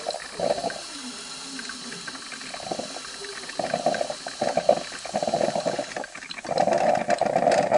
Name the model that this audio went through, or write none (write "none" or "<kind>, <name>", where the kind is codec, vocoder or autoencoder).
none